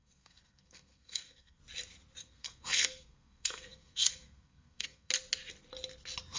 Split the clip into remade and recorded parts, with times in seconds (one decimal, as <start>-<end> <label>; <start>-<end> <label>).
0.0-1.6 remade; 1.6-2.2 recorded; 2.2-5.1 remade; 5.1-6.4 recorded